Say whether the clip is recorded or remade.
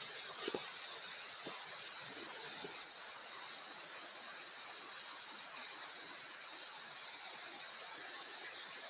remade